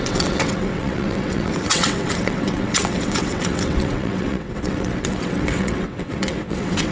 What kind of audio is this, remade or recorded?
remade